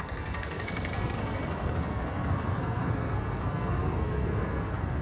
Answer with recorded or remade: remade